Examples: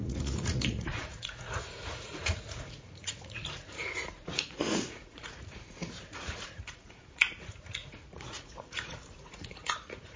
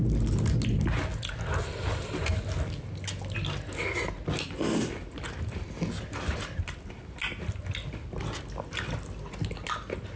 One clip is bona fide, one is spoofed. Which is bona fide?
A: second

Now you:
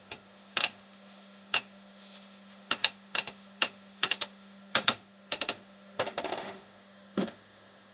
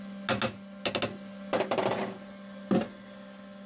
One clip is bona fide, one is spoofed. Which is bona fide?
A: second